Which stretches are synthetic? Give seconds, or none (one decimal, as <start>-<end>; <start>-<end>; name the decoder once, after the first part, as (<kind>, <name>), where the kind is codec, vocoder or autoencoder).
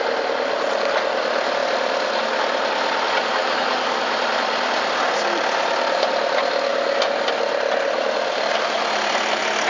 3.4-4.0 (codec, DAC)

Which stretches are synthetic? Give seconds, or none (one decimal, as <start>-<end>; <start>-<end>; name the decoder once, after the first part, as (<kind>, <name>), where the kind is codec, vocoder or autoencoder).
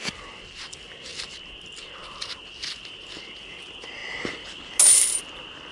none